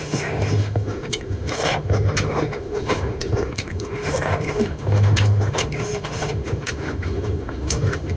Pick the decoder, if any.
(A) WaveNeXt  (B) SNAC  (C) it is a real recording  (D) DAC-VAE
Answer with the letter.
D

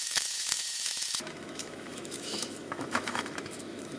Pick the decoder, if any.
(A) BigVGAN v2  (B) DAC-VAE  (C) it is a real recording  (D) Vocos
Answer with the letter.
B